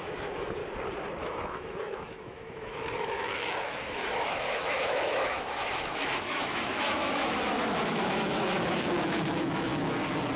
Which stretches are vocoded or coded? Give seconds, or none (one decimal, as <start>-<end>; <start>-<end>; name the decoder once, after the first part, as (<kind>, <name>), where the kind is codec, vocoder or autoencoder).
0.0-0.6 (autoencoder, DAC-VAE); 1.2-9.7